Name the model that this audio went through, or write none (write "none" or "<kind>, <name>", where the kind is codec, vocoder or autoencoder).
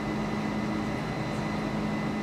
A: none